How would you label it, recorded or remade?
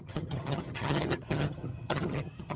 remade